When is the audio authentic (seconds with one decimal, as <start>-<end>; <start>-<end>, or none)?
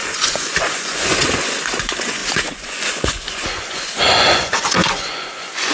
none